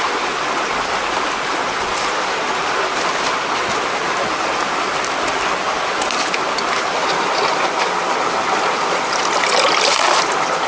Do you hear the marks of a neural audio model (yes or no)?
no